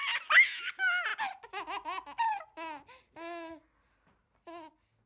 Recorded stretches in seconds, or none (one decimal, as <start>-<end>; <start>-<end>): 0.0-5.1